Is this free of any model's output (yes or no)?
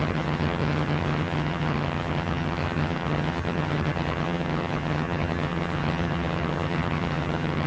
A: no